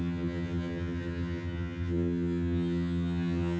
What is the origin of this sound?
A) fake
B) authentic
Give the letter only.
A